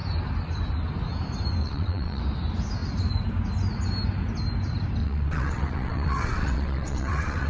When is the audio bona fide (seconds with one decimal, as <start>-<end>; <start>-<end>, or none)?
0.0-1.6; 2.2-5.0